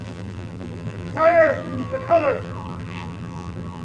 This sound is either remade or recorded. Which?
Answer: remade